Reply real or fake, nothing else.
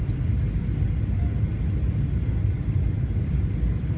real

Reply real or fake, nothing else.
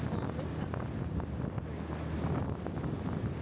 real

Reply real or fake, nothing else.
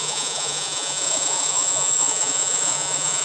fake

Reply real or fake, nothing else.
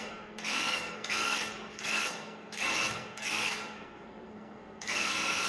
fake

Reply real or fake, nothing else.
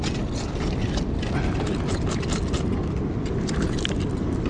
real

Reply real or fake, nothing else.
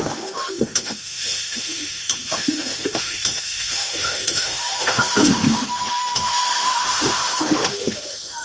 fake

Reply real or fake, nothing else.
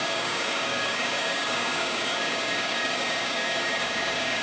fake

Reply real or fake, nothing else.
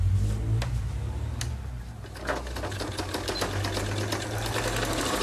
real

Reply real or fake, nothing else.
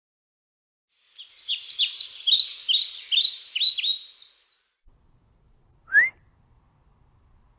real